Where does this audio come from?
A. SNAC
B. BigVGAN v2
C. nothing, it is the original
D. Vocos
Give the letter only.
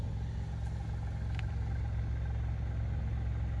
C